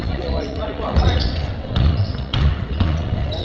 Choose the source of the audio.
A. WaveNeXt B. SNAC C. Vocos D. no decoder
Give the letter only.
A